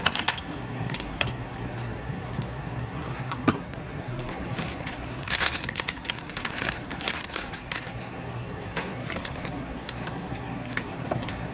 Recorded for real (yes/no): no